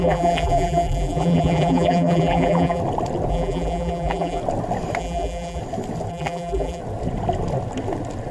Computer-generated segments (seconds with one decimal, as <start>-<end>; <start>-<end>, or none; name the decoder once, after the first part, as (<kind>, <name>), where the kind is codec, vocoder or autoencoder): 0.0-2.8 (vocoder, BigVGAN v2); 3.3-4.4; 5.0-5.6; 6.1-6.8